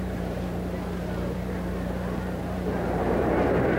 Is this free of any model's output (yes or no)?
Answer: no